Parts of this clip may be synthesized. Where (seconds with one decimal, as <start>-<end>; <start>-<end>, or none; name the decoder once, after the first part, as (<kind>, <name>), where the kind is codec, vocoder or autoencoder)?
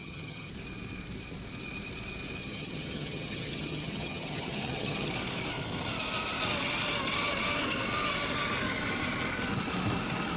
0.0-0.5 (vocoder, HiFi-GAN); 2.4-5.1